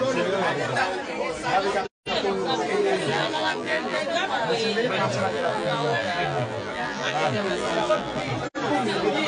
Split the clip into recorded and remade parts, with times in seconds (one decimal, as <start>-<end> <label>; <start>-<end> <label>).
0.0-3.1 recorded; 3.1-4.0 remade; 4.0-5.2 recorded; 5.2-8.3 remade; 8.3-9.3 recorded